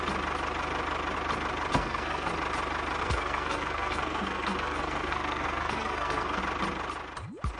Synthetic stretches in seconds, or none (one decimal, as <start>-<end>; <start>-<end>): 1.7-2.3; 3.0-6.4

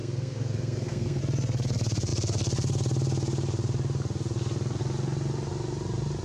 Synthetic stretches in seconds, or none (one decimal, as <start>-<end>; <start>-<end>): 0.0-1.2

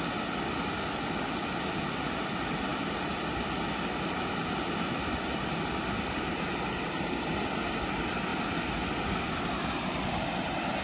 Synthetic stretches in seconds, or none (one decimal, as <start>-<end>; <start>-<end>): none

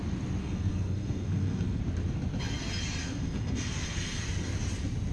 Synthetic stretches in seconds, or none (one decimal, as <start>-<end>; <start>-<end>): 0.4-1.8; 3.0-4.2

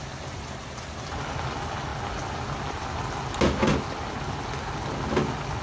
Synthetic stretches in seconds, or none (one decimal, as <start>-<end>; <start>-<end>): none

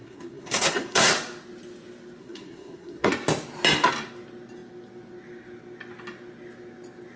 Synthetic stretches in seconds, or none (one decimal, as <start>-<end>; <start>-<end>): 0.0-1.1; 2.2-3.1

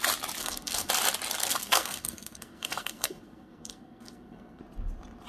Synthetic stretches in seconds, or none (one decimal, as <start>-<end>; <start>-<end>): 0.4-0.9; 1.4-4.6